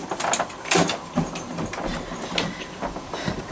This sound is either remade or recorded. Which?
recorded